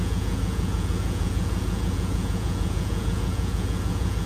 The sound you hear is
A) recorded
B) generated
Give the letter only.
B